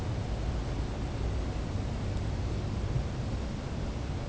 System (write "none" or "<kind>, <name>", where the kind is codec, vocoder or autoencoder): none